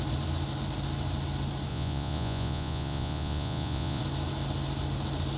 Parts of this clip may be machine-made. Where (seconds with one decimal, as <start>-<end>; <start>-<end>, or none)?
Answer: 1.7-4.0